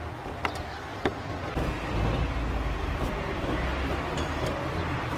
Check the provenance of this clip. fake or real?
real